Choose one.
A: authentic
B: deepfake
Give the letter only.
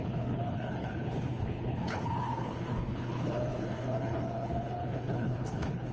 B